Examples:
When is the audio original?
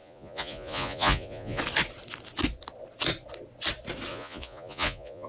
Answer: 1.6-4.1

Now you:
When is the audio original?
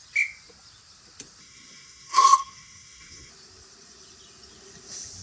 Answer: 0.0-1.4; 3.3-5.2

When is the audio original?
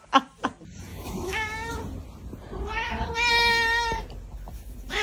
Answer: 0.0-0.9; 1.7-5.0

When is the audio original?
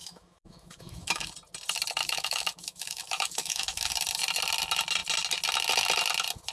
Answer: 1.3-2.0; 3.9-6.5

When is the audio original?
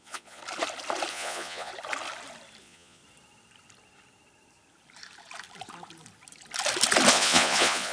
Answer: 0.4-1.1; 1.7-2.6; 3.0-7.1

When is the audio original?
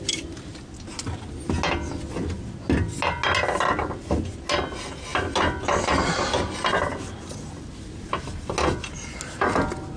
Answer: 0.0-10.0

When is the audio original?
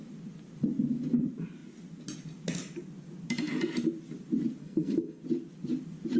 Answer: 0.0-4.6; 5.2-6.2